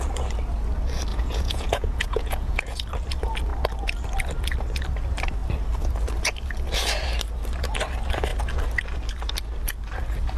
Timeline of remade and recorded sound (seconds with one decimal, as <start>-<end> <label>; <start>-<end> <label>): 0.0-1.1 recorded; 1.1-2.8 remade; 2.8-10.4 recorded